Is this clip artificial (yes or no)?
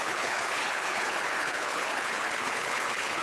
yes